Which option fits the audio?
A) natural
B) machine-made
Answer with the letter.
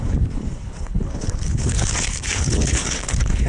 B